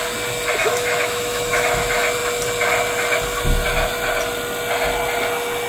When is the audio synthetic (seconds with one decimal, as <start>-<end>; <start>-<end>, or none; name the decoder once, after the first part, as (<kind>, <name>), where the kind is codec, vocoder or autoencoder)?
0.6-1.8 (autoencoder, DAC-VAE)